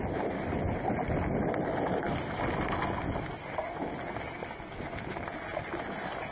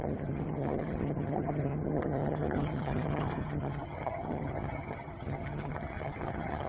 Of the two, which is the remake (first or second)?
second